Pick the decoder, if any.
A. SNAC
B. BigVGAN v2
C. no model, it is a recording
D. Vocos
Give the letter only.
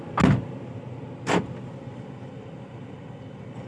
C